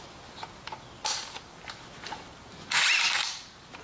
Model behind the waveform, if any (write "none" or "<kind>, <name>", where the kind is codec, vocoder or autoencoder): none